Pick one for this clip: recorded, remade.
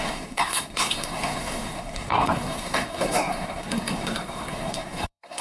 remade